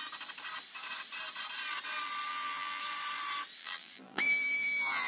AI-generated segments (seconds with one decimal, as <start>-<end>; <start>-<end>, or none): 2.3-2.8; 3.6-5.1